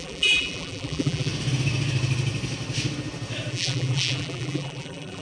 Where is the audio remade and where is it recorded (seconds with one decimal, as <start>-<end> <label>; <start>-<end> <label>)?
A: 0.0-1.3 remade; 1.3-3.5 recorded; 3.5-5.2 remade